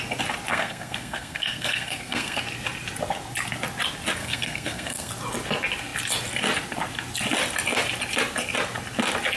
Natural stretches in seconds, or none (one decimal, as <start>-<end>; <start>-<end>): 0.0-0.5; 2.4-4.2; 5.1-9.4